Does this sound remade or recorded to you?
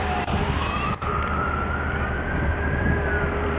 remade